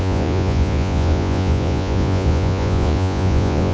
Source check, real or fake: fake